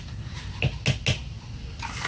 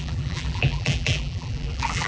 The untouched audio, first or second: first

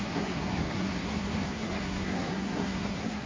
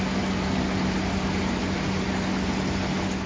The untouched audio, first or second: second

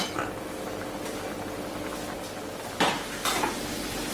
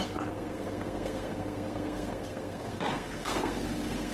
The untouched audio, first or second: first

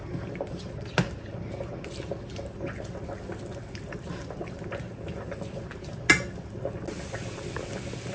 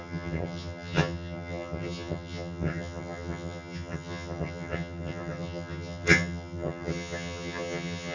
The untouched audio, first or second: first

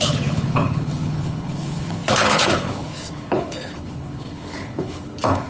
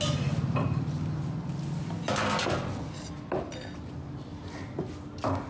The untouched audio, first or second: second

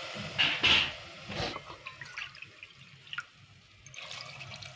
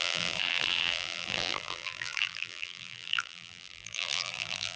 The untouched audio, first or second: first